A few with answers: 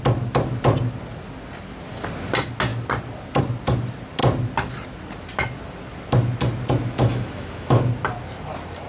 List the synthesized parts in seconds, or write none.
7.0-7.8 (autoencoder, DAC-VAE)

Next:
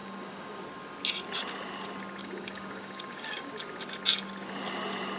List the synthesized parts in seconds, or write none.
0.0-0.6 (codec, DAC); 2.2-3.5